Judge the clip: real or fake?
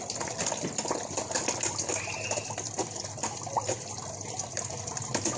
real